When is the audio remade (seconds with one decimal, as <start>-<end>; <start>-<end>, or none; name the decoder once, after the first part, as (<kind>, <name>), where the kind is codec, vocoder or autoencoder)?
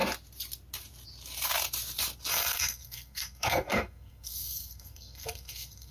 2.3-5.9 (codec, SNAC)